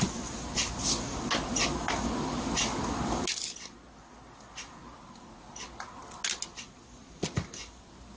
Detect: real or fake real